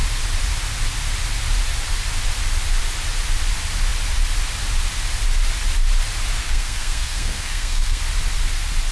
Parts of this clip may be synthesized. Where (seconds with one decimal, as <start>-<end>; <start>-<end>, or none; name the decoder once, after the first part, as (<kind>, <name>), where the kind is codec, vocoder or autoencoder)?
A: 6.4-8.0 (codec, SNAC)